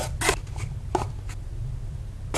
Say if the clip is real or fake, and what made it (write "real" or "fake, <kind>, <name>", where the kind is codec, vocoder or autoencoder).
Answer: fake, vocoder, BigVGAN v2